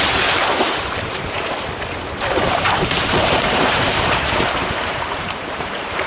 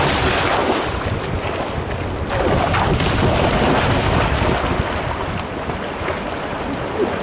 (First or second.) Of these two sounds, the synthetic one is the first